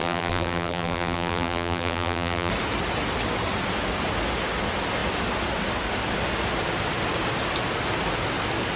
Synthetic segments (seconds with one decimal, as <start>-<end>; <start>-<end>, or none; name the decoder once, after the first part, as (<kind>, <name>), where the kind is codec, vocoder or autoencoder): 0.0-2.5 (vocoder, BigVGAN v2)